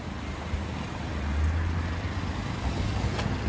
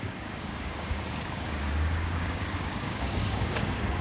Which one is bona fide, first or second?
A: first